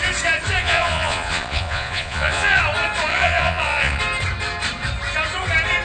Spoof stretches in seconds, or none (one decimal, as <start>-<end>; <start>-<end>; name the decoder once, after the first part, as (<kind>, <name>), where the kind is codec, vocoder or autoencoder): 0.6-2.6 (vocoder, Vocos); 3.1-4.0